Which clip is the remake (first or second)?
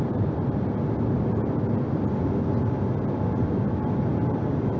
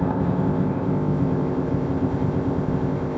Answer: second